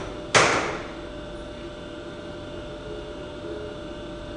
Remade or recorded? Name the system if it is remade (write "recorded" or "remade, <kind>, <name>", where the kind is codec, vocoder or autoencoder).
recorded